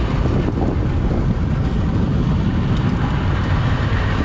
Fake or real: real